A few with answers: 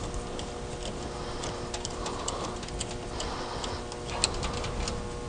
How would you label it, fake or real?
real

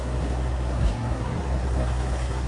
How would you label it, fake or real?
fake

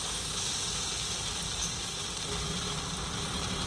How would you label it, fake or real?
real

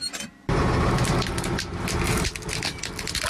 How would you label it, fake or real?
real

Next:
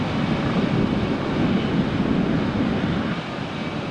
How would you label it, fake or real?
real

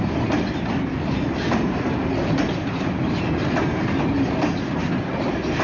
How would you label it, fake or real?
real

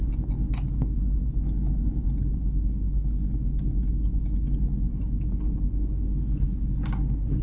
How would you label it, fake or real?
real